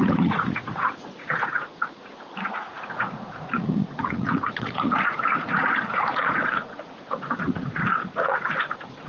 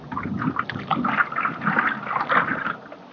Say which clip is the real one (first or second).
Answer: second